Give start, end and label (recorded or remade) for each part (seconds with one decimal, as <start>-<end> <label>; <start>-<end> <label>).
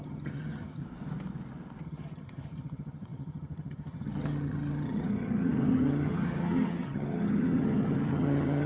0.0-0.8 remade; 0.8-1.8 recorded; 1.8-8.7 remade